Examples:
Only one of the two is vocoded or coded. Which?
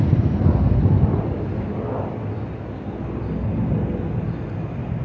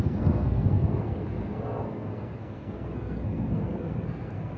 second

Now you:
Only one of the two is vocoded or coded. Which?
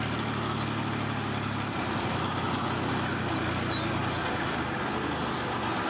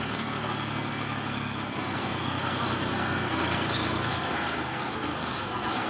second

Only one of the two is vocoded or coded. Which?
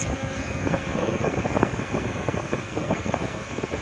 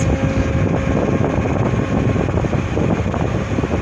first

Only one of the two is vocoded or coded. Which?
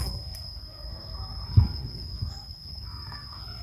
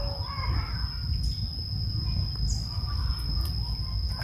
first